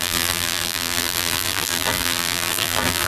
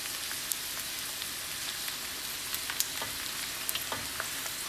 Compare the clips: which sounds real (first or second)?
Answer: second